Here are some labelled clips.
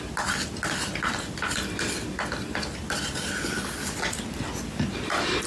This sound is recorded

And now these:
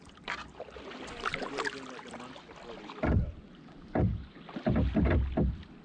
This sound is recorded